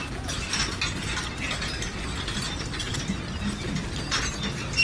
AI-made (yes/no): no